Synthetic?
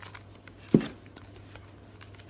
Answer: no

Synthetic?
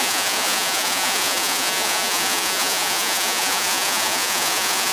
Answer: yes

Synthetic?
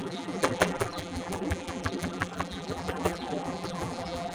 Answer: yes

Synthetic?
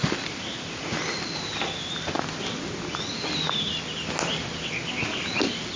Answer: no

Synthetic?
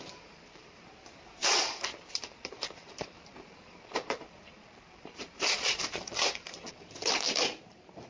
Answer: yes